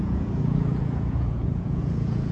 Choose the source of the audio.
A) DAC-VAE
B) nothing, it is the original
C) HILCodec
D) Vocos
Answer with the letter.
D